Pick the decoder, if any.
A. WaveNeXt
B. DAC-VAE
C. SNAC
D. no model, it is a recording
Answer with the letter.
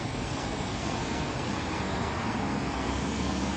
C